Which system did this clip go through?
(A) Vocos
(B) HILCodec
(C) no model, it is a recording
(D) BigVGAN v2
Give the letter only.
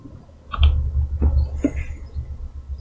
C